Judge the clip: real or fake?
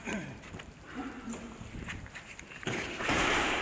fake